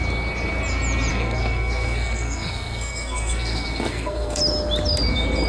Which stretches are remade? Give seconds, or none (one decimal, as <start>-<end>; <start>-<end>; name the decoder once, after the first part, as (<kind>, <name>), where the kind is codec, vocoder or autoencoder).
1.1-4.4 (codec, SNAC)